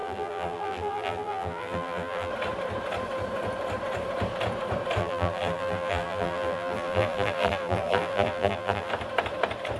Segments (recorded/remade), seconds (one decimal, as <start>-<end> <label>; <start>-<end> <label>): 0.0-2.3 remade; 2.3-5.0 recorded; 5.0-8.9 remade; 8.9-9.8 recorded